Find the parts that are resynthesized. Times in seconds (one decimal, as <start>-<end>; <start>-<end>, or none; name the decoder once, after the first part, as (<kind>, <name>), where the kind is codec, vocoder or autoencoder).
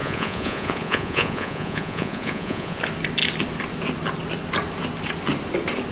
0.0-2.8 (vocoder, Vocos)